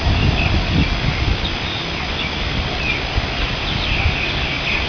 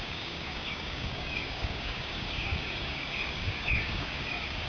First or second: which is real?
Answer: first